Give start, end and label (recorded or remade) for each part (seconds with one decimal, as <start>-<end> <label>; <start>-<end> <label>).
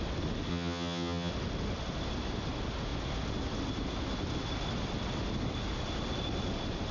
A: 0.0-0.5 recorded; 0.5-1.3 remade; 1.3-6.9 recorded